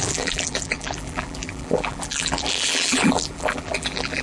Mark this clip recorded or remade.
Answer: remade